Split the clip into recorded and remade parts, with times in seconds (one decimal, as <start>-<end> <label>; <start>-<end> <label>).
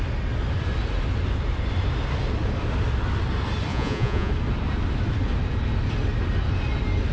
0.0-3.7 recorded; 3.7-4.3 remade; 4.3-7.1 recorded